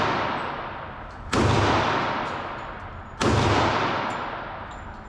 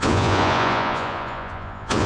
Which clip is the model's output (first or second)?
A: second